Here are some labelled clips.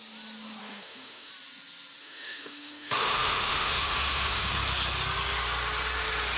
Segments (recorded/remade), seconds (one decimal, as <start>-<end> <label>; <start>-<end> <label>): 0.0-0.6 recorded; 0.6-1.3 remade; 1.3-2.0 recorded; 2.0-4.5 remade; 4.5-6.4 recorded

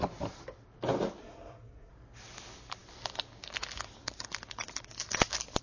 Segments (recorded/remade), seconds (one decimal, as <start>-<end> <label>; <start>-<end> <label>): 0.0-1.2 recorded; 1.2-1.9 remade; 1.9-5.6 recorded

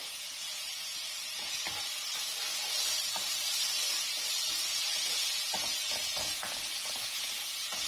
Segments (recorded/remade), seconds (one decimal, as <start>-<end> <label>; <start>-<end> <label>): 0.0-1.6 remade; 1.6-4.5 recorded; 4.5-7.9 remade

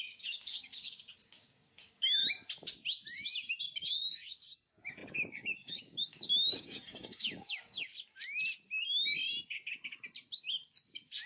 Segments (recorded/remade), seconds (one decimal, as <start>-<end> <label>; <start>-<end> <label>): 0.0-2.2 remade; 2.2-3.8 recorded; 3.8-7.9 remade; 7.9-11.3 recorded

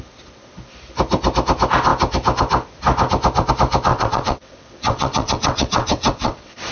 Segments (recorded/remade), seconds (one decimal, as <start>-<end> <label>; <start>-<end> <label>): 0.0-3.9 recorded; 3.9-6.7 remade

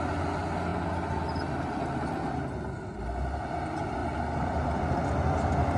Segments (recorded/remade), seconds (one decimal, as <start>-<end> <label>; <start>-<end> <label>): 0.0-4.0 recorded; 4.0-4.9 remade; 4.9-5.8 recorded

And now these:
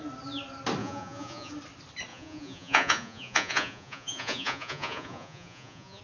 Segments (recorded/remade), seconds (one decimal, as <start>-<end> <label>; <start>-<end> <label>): 0.0-0.8 recorded; 0.8-1.5 remade; 1.5-2.1 recorded; 2.1-6.0 remade

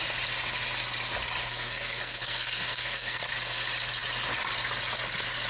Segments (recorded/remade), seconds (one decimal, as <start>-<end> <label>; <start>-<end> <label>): 0.0-1.5 recorded; 1.5-3.2 remade; 3.2-5.5 recorded